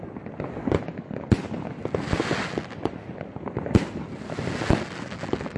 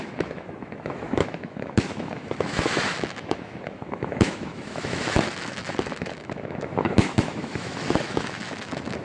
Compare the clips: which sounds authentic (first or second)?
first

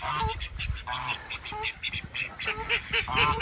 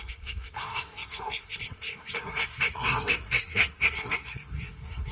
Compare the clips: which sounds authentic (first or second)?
first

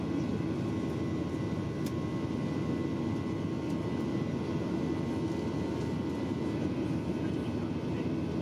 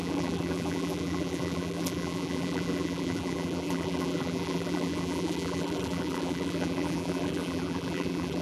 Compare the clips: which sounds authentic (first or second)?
first